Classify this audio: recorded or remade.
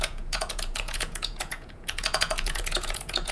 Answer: remade